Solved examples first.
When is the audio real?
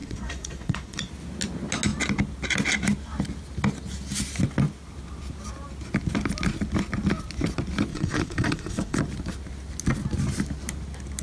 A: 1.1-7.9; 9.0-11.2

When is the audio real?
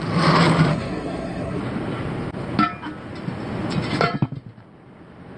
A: 0.0-0.7; 1.6-5.4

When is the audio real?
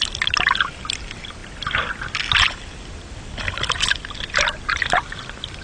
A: 0.0-5.6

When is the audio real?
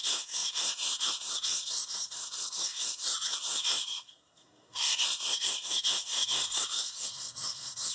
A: none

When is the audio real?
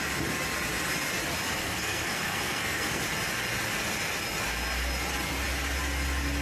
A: 0.0-1.6; 3.0-6.4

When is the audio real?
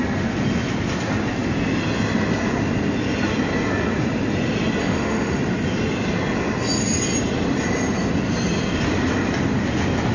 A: 0.0-4.8; 5.4-10.1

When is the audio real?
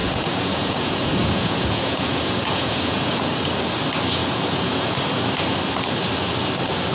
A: 3.3-4.2; 5.0-6.9